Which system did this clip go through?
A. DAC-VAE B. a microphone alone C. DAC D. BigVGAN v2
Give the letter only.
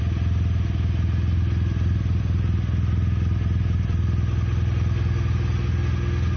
B